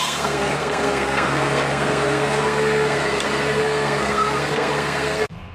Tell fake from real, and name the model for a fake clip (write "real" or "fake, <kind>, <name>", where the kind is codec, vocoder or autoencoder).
fake, codec, SNAC